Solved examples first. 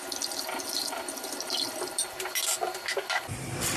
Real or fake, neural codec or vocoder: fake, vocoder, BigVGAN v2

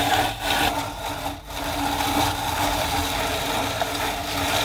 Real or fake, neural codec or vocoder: real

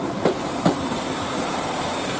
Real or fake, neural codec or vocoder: fake, vocoder, BigVGAN v2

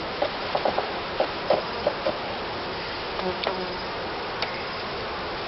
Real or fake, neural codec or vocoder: real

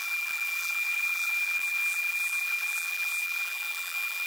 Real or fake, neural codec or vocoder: fake, vocoder, BigVGAN v2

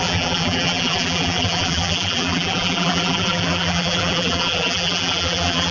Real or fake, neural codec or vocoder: fake, vocoder, BigVGAN v2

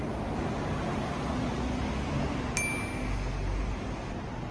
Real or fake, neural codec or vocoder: real